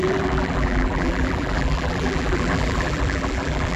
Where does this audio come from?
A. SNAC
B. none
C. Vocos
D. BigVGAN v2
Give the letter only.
D